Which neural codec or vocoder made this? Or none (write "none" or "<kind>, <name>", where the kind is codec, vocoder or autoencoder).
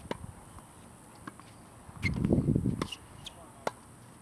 none